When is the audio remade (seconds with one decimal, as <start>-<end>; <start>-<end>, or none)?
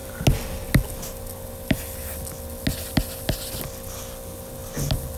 none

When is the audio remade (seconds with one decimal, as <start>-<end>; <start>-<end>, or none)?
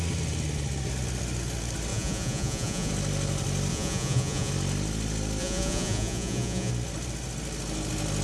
1.9-2.9; 3.7-4.5; 5.4-6.7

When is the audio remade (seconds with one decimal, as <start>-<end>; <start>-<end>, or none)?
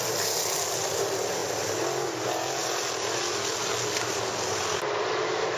none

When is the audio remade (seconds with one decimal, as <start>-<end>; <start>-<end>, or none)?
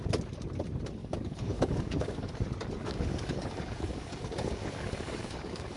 1.0-2.3; 2.8-5.8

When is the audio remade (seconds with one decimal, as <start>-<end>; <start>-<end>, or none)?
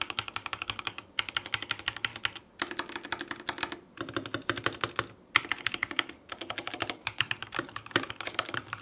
0.0-2.1; 5.6-8.8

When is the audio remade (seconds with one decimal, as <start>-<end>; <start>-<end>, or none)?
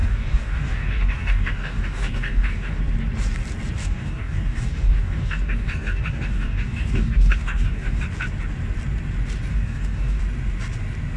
0.0-2.8; 3.8-8.0; 9.5-10.2